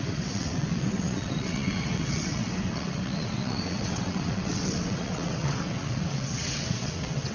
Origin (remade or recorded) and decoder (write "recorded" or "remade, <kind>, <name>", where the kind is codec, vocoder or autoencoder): remade, vocoder, WaveNeXt